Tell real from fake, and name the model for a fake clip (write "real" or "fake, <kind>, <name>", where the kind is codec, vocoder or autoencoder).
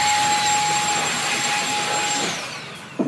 real